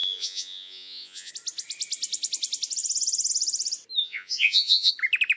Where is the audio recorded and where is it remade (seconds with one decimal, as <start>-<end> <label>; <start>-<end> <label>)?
0.0-1.3 remade; 1.3-4.0 recorded; 4.0-4.9 remade; 4.9-5.4 recorded